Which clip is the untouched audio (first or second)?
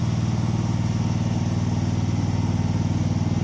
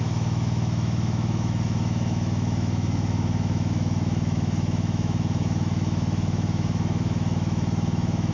first